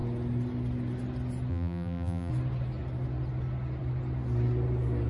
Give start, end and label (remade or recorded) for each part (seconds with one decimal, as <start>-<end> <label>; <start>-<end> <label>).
0.0-1.5 recorded; 1.5-2.3 remade; 2.3-5.1 recorded